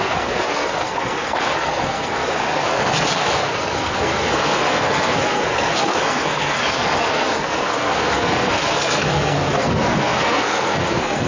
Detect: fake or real fake